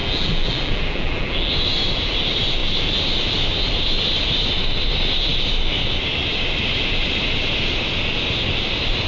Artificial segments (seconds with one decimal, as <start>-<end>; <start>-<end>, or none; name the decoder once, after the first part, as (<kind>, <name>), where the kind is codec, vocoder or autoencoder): 0.0-1.5 (vocoder, BigVGAN v2)